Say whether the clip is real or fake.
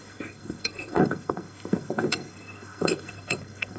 fake